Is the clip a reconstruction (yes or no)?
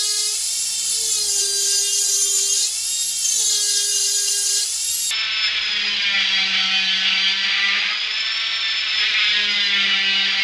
no